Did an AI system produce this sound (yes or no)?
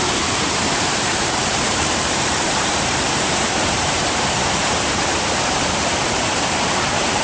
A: yes